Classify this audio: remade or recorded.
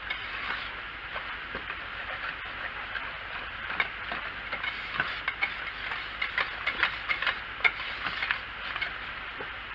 recorded